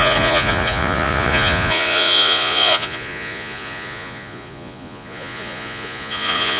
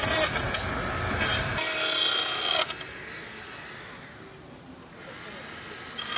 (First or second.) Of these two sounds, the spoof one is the first